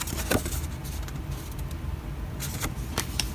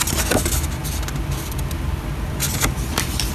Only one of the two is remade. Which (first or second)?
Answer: first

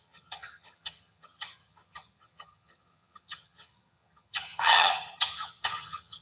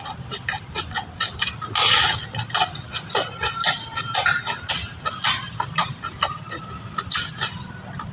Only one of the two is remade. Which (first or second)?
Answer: first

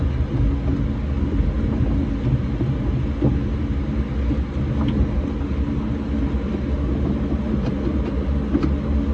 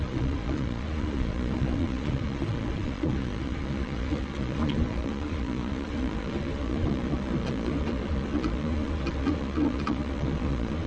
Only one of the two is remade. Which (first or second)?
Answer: second